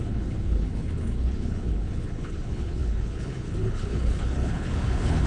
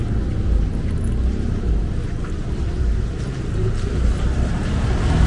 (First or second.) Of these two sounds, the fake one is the first